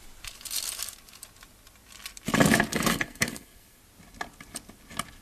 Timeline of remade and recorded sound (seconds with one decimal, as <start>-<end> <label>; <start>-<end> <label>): 0.0-2.7 recorded; 2.7-3.8 remade; 3.8-5.2 recorded